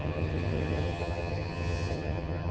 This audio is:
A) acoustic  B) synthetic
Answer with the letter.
B